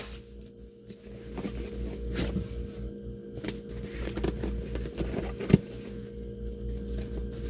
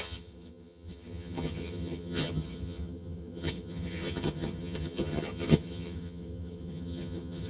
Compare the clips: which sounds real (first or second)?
first